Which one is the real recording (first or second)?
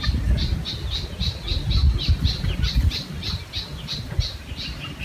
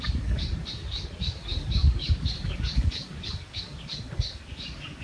first